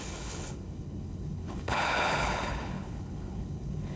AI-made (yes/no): yes